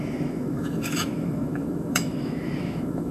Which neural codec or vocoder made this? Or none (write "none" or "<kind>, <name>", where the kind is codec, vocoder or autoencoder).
autoencoder, DAC-VAE